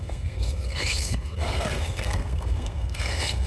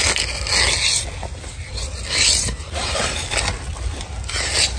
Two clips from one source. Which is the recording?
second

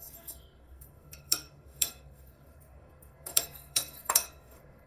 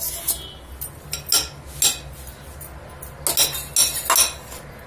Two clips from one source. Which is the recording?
second